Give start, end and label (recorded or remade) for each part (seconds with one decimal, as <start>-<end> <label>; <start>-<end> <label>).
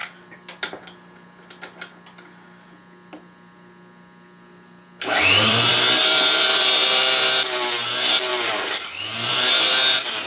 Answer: 0.0-5.2 recorded; 5.2-10.3 remade